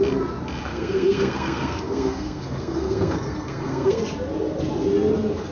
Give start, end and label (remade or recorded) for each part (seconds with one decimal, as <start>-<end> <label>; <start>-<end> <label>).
0.0-0.7 recorded; 0.7-4.0 remade; 4.0-5.5 recorded